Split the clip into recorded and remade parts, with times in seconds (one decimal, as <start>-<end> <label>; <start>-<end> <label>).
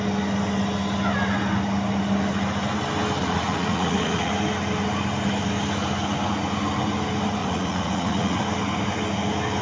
0.0-3.2 recorded; 3.2-4.3 remade; 4.3-7.4 recorded; 7.4-8.4 remade; 8.4-9.6 recorded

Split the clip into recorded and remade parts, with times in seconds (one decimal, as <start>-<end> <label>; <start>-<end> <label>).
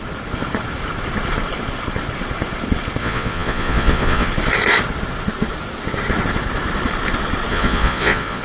0.0-3.0 recorded; 3.0-4.3 remade; 4.3-7.5 recorded; 7.5-8.4 remade